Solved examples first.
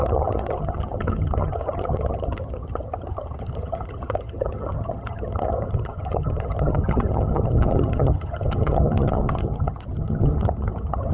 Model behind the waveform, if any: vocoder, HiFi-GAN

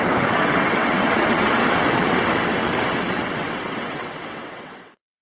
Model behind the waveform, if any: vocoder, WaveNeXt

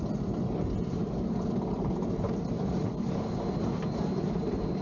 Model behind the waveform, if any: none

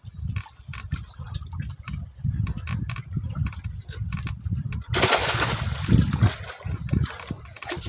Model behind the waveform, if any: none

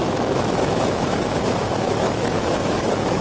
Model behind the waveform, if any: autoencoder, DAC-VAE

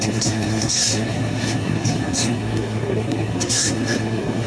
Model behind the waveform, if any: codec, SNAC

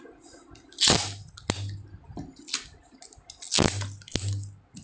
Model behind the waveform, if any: none